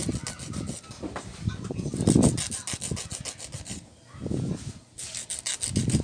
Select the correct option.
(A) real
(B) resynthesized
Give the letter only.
A